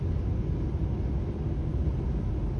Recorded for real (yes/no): yes